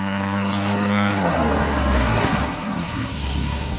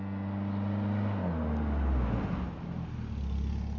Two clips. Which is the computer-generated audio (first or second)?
first